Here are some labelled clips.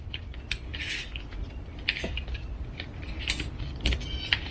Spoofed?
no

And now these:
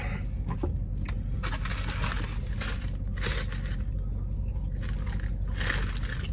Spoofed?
no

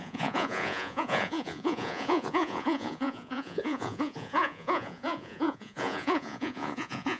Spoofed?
yes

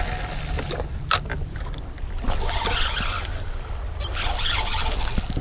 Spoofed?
no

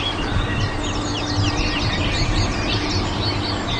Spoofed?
no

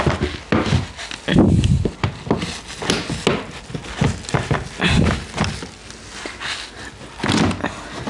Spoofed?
no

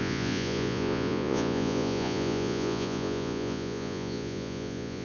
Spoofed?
yes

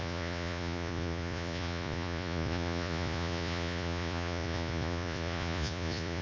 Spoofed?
yes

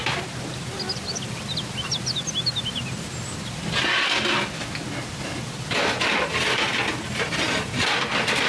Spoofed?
no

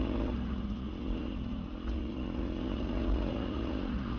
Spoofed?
yes